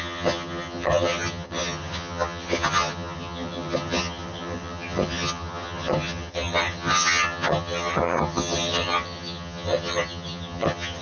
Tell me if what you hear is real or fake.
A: fake